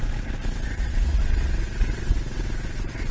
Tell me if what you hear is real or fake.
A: fake